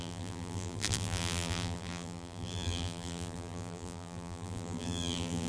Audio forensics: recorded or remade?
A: remade